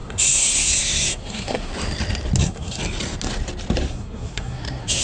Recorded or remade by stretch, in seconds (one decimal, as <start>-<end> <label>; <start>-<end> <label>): 0.0-1.7 remade; 1.7-2.4 recorded; 2.4-2.8 remade; 2.8-3.9 recorded; 3.9-5.0 remade